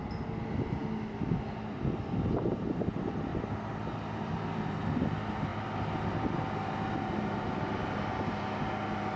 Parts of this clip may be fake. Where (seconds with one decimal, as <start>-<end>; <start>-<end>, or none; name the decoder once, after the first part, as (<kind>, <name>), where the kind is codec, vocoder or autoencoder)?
3.3-4.5 (vocoder, BigVGAN v2)